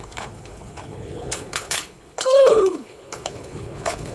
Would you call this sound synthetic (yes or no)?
yes